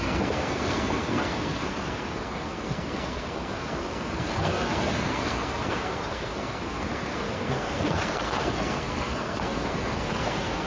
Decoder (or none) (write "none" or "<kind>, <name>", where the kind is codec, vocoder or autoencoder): codec, SNAC